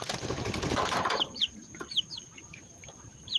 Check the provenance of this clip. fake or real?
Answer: fake